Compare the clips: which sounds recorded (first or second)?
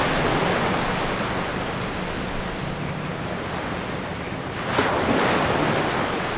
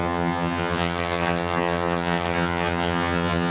first